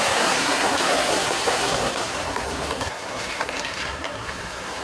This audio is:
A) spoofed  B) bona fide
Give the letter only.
A